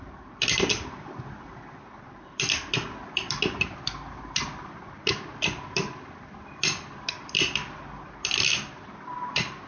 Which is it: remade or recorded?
remade